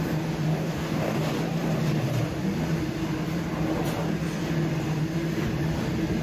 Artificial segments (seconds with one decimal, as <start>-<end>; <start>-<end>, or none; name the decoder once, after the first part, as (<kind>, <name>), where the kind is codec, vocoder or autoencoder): 0.6-1.2 (codec, DAC)